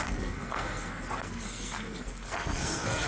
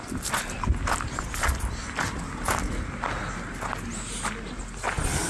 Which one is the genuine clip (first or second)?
second